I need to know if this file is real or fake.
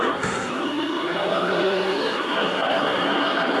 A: fake